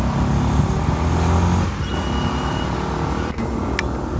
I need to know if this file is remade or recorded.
recorded